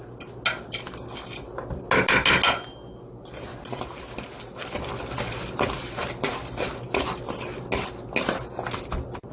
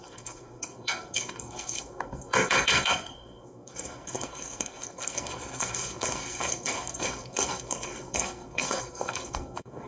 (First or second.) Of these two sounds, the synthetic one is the second